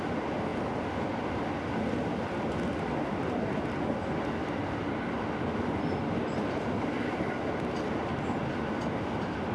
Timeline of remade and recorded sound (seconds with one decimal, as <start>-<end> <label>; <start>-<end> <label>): 0.0-9.5 recorded